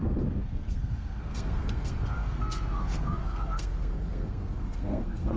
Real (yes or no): no